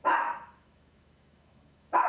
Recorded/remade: remade